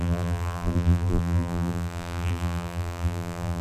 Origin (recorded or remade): remade